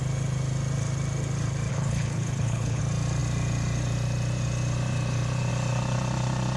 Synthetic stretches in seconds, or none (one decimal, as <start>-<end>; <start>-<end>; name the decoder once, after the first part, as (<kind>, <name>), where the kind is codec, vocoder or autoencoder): 1.7-2.8 (codec, HILCodec)